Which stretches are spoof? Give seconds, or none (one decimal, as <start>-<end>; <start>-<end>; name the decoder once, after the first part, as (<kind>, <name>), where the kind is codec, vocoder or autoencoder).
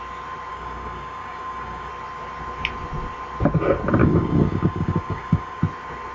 0.5-1.9 (codec, DAC); 4.0-5.6